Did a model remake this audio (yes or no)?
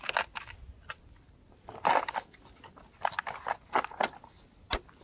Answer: no